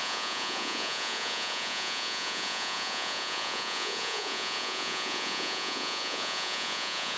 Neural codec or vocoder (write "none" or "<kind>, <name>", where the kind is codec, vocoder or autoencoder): vocoder, Vocos